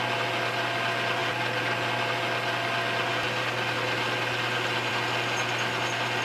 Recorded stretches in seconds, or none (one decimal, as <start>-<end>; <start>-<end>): 0.0-6.2